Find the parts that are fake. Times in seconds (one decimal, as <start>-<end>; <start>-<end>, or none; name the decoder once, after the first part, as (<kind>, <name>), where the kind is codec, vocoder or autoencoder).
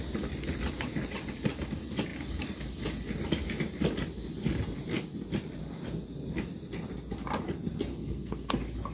7.9-8.5 (codec, SNAC)